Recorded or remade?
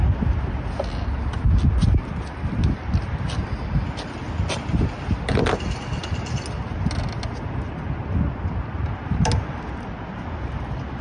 recorded